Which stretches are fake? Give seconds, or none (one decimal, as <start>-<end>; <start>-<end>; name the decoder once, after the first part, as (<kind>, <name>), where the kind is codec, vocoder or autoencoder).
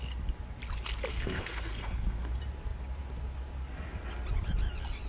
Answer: 1.1-2.3 (codec, SNAC)